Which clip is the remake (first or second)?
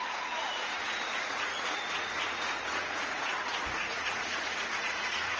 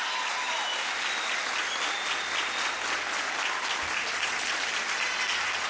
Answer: first